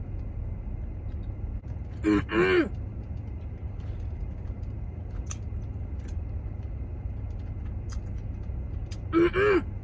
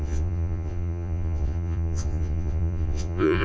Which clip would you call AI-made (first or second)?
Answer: second